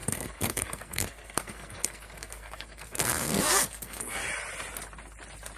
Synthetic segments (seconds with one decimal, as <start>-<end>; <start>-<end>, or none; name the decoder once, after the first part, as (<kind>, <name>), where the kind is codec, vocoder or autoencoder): 0.0-4.2 (codec, SNAC)